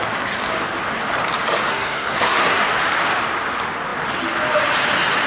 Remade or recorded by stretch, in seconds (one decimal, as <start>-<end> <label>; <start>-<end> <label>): 0.0-1.7 recorded; 1.7-2.6 remade; 2.6-5.3 recorded